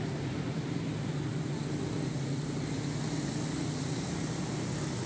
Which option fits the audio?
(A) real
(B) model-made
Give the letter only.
A